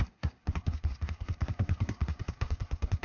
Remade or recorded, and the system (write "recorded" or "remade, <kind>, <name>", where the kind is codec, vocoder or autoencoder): remade, codec, SNAC